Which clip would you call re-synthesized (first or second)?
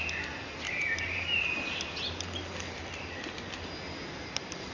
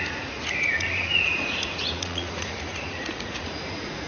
second